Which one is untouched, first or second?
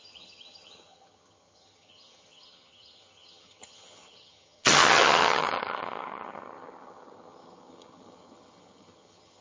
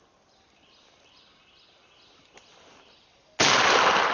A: second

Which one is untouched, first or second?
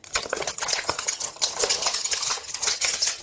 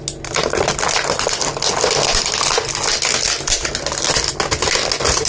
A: second